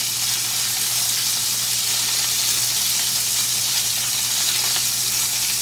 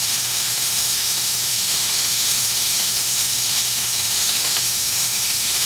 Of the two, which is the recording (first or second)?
first